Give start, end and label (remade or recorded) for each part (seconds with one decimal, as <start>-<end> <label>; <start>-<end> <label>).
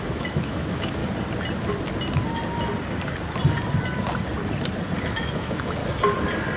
0.0-1.0 remade; 1.0-5.0 recorded; 5.0-5.8 remade; 5.8-6.6 recorded